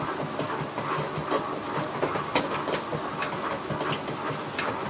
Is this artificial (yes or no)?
no